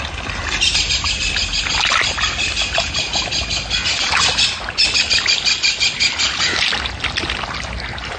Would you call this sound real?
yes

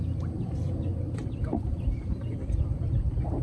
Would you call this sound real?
yes